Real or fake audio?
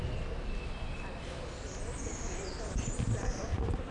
real